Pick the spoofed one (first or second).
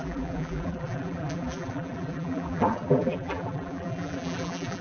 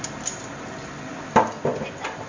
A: first